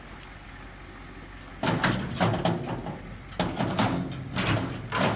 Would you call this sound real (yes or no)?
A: yes